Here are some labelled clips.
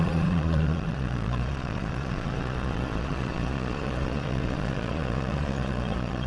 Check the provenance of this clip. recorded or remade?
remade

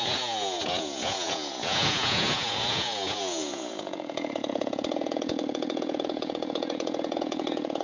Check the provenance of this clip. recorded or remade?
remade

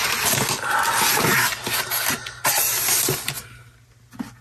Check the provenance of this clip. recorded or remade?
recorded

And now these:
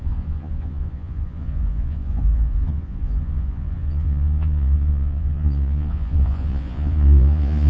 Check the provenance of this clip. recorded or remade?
remade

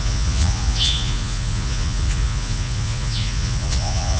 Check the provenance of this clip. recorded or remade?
remade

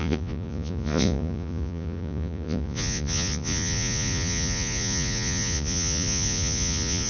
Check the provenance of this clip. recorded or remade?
remade